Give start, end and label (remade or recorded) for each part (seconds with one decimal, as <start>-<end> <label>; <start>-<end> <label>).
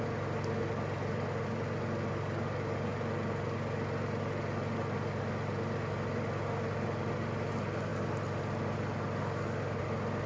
0.0-10.3 recorded